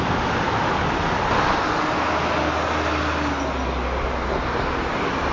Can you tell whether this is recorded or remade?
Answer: recorded